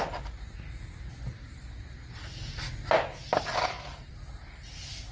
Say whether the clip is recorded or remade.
recorded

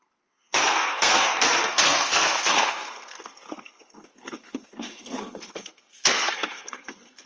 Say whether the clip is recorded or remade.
remade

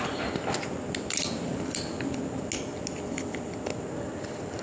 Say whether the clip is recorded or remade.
recorded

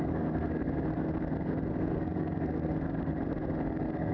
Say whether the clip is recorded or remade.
remade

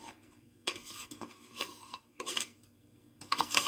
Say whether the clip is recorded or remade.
remade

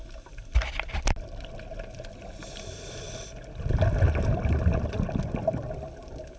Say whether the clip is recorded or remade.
recorded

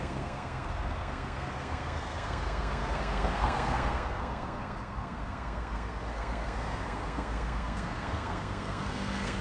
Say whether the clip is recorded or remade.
remade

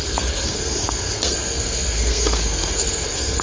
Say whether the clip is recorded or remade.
remade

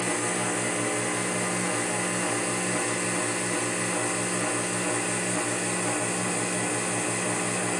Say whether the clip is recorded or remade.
recorded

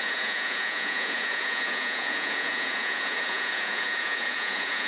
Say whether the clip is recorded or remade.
remade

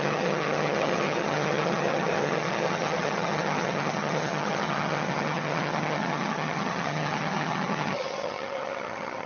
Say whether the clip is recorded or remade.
remade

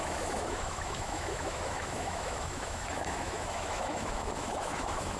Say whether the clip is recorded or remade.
remade